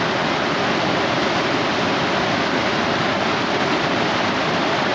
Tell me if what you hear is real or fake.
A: real